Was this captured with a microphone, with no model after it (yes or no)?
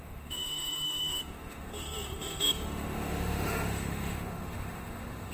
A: no